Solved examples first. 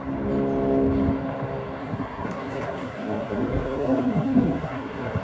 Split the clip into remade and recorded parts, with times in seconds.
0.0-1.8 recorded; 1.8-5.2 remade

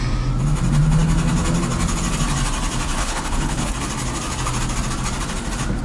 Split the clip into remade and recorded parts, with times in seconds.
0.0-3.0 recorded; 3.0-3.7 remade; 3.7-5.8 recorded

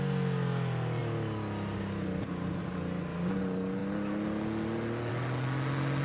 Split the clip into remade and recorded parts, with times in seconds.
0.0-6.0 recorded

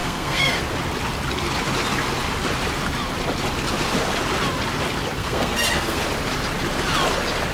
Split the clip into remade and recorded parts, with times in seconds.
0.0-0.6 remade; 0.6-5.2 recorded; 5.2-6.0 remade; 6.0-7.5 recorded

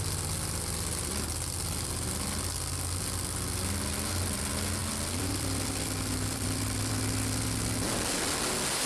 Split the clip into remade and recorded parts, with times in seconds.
0.0-4.8 recorded; 4.8-6.9 remade; 6.9-8.9 recorded

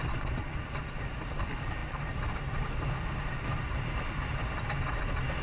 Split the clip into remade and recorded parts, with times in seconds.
0.0-5.4 recorded